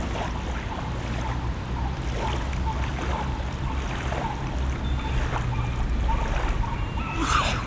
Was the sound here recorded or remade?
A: recorded